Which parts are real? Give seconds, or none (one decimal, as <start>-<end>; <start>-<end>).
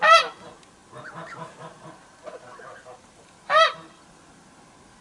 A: 0.0-5.0